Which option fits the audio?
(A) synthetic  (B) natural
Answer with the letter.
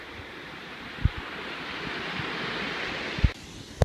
B